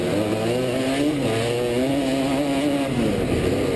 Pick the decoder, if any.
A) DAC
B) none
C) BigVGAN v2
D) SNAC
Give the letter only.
B